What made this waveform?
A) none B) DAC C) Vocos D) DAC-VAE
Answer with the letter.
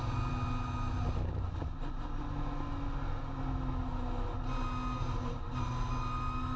A